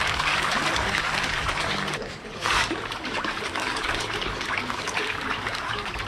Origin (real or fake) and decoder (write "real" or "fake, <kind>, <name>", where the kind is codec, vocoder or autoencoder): fake, codec, DAC